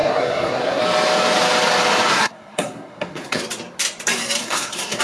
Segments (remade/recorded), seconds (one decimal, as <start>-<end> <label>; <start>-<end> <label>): 0.0-0.8 remade; 0.8-2.1 recorded; 2.1-3.4 remade; 3.4-4.4 recorded; 4.4-5.0 remade